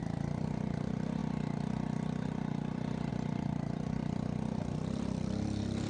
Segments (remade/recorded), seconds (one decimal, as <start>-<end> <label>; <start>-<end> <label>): 0.0-5.9 recorded